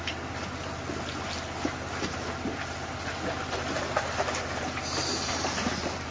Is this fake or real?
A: real